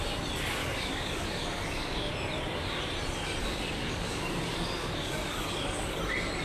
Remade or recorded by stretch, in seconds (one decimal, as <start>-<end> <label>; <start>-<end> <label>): 0.0-0.6 recorded; 0.6-2.1 remade; 2.1-3.4 recorded; 3.4-6.0 remade; 6.0-6.4 recorded